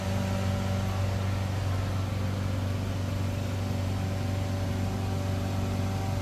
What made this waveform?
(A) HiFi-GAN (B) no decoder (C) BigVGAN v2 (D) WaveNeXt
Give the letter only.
B